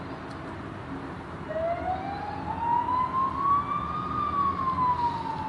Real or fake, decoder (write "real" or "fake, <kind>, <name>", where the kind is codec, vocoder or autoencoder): real